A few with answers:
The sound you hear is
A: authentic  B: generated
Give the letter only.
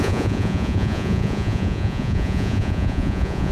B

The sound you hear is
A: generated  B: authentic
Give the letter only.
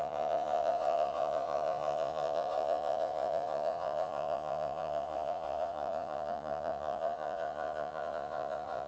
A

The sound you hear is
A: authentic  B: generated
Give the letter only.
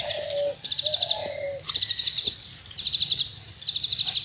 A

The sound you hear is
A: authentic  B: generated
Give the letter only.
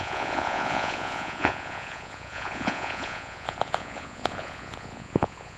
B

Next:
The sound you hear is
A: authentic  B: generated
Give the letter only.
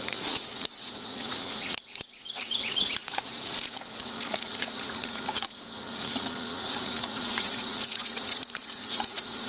B